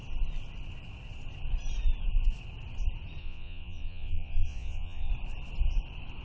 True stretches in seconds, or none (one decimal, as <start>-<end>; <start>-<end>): 0.0-3.2; 5.1-6.2

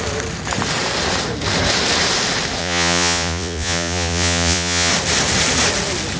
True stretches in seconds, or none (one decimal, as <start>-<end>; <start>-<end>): 0.0-2.6; 4.9-6.2

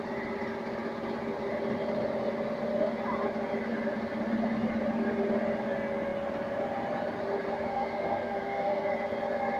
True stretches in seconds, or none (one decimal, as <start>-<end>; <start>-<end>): 0.0-7.7; 8.9-9.6

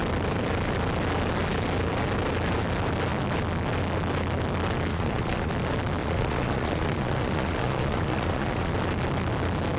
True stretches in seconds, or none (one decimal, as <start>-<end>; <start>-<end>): 0.0-4.9; 5.5-6.0; 8.7-9.8

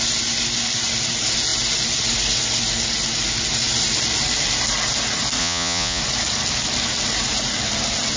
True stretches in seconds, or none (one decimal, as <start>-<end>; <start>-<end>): 0.0-5.4; 6.0-8.2

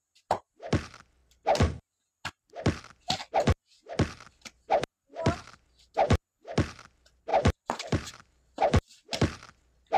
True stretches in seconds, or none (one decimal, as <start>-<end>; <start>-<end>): 0.0-7.3; 8.6-10.0

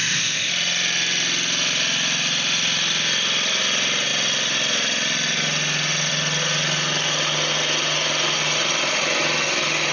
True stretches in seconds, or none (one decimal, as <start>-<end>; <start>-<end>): 0.5-9.9

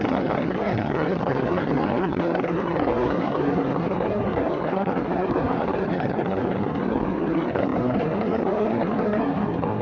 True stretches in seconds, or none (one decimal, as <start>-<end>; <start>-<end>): none